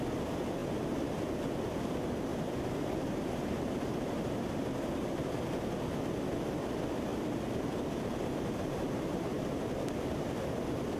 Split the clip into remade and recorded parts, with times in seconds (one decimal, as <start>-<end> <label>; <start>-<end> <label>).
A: 0.0-2.3 recorded; 2.3-5.4 remade; 5.4-7.1 recorded; 7.1-9.9 remade; 9.9-11.0 recorded